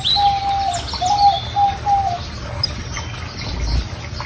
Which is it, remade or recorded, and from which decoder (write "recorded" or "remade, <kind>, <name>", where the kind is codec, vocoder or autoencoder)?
recorded